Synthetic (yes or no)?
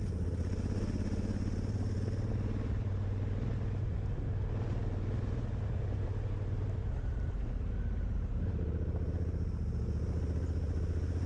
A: no